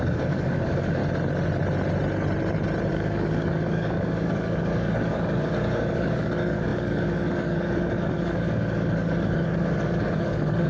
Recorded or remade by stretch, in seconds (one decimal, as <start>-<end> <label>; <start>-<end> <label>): 0.0-1.0 remade; 1.0-2.9 recorded; 2.9-10.7 remade